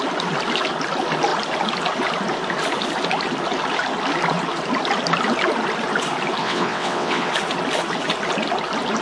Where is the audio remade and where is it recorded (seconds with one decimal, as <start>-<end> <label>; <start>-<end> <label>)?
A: 0.0-6.4 recorded; 6.4-7.3 remade; 7.3-9.0 recorded